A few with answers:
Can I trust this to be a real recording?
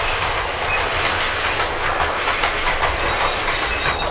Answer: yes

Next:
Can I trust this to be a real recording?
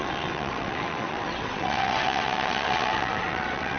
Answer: no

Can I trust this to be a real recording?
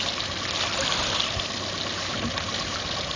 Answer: yes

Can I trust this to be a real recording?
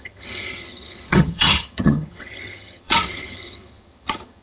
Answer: no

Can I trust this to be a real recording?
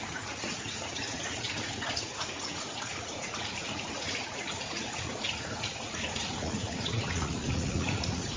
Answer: no